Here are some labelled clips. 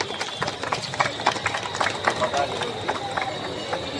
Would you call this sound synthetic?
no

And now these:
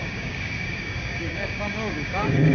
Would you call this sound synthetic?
yes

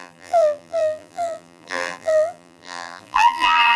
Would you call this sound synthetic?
yes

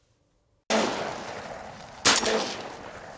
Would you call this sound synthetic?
no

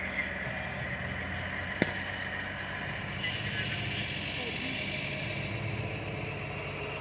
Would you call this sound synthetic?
no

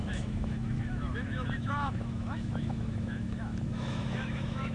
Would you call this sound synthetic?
yes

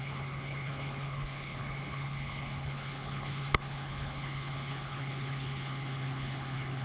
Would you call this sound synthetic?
yes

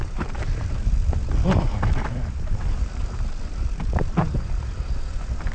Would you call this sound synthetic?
yes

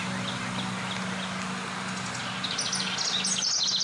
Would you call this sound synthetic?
no